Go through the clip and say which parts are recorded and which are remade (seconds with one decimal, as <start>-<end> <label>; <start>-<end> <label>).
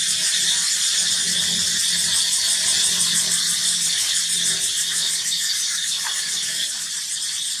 0.0-3.6 recorded; 3.6-4.2 remade; 4.2-4.9 recorded; 4.9-6.9 remade; 6.9-7.6 recorded